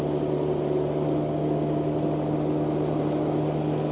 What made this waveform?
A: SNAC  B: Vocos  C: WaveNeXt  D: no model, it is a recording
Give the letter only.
D